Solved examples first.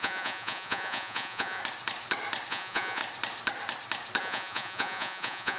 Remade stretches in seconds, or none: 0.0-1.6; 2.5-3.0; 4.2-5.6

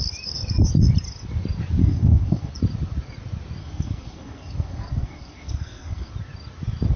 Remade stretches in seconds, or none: 1.8-2.5; 3.6-6.1

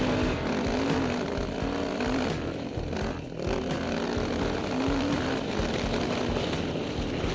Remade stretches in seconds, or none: 4.6-5.6

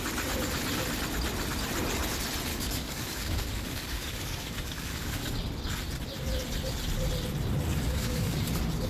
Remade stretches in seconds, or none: 2.5-5.3; 7.9-8.4

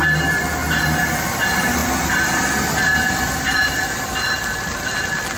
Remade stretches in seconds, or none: none